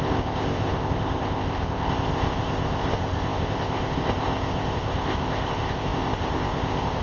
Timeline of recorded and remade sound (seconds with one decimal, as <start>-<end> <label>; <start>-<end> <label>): 0.0-7.0 remade